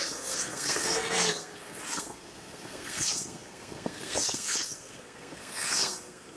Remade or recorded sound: remade